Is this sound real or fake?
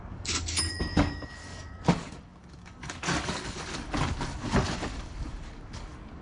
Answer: fake